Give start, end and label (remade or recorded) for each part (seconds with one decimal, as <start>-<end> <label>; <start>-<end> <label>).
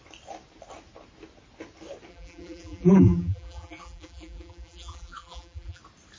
0.0-2.1 recorded; 2.1-5.8 remade; 5.8-6.2 recorded